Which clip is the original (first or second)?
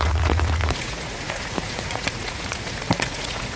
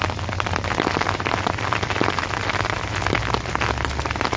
second